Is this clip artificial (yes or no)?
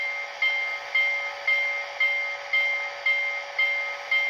no